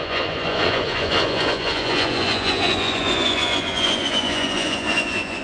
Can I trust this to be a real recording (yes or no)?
no